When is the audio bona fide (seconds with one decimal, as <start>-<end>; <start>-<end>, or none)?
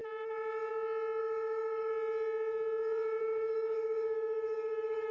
0.0-1.2; 1.9-3.2